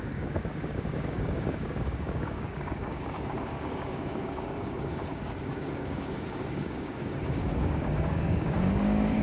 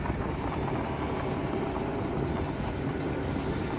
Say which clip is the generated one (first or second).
first